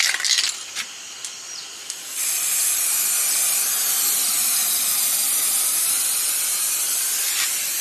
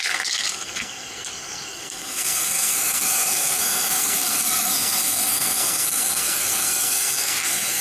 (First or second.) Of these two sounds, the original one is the first